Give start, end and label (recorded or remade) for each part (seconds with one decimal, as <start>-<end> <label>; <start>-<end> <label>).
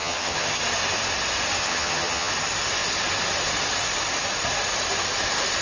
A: 0.0-0.6 remade; 0.6-1.6 recorded; 1.6-2.3 remade; 2.3-5.6 recorded